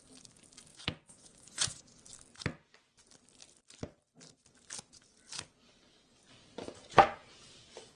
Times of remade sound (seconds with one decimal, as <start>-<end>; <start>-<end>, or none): 0.7-1.8